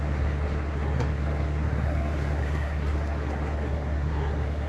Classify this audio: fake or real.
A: fake